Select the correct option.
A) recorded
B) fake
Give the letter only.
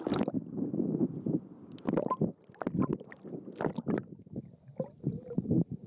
A